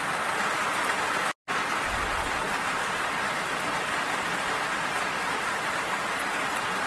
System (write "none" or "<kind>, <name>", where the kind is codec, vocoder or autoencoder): none